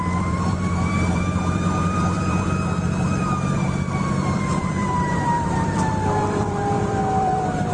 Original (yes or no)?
no